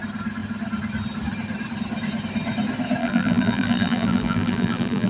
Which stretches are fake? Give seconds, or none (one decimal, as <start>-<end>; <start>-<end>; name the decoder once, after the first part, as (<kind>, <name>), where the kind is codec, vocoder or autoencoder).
3.0-5.1 (vocoder, BigVGAN v2)